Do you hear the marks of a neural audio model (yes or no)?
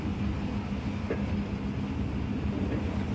no